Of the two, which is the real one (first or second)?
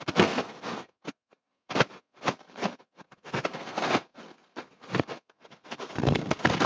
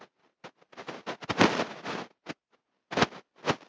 second